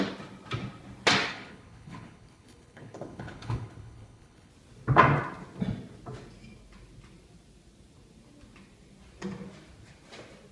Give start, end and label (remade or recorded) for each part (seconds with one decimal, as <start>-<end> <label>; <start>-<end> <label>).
0.0-1.3 recorded; 1.3-4.5 remade; 4.5-10.5 recorded